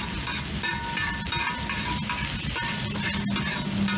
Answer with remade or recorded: recorded